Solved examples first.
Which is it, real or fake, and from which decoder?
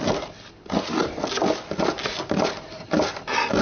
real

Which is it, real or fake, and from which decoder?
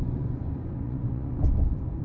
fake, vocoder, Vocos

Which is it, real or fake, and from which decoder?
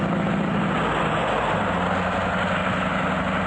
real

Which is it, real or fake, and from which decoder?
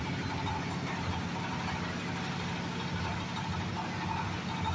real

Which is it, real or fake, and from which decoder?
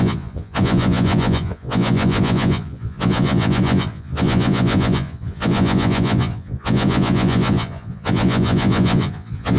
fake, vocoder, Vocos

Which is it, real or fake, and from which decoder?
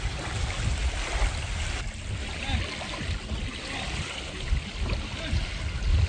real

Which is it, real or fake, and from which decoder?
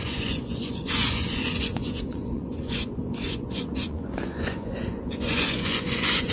fake, vocoder, Vocos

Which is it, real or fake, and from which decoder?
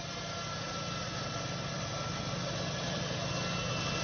real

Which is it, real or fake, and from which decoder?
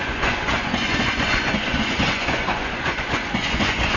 fake, vocoder, Vocos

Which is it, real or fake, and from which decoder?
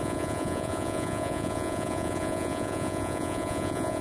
fake, vocoder, Vocos